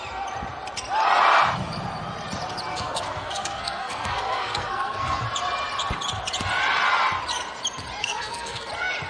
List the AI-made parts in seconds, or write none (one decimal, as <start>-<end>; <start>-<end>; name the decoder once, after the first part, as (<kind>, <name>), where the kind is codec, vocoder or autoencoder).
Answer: 2.7-5.2 (codec, SNAC); 8.0-8.7